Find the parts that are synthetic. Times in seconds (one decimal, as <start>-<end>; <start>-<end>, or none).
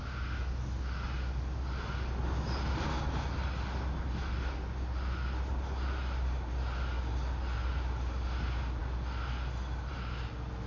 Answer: none